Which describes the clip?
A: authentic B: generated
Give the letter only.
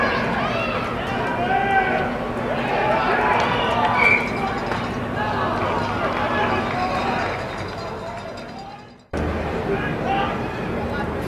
A